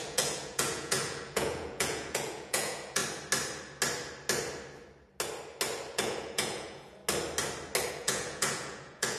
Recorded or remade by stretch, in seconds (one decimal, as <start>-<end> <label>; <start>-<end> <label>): 0.0-3.0 remade; 3.0-5.9 recorded; 5.9-7.0 remade; 7.0-7.9 recorded; 7.9-9.2 remade